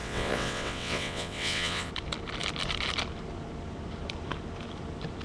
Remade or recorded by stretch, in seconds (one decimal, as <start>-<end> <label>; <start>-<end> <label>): 0.0-1.9 remade; 1.9-5.2 recorded